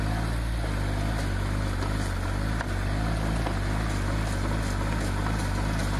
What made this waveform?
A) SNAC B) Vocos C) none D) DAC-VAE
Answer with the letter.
C